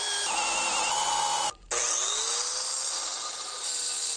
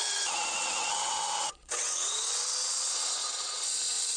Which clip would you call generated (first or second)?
second